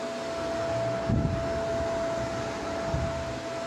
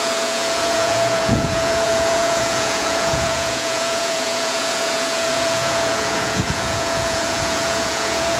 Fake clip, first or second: second